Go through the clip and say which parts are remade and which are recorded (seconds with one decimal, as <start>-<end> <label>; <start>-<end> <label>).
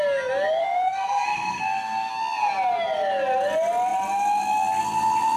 0.0-0.6 recorded; 0.6-2.1 remade; 2.1-5.4 recorded